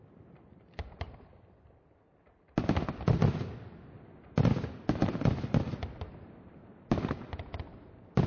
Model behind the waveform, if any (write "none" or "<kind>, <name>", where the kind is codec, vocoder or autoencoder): vocoder, BigVGAN v2